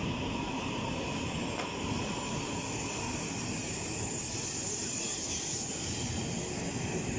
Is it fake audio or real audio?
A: real